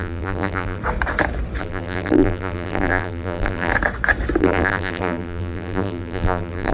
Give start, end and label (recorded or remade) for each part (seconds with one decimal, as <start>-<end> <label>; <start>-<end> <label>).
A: 0.0-0.8 remade; 0.8-1.6 recorded; 1.6-3.7 remade; 3.7-4.4 recorded; 4.4-6.7 remade